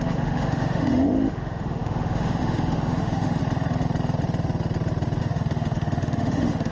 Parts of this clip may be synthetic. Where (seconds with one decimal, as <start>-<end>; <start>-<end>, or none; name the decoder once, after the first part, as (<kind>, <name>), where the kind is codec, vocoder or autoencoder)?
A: 0.0-3.4 (autoencoder, DAC-VAE); 5.2-6.7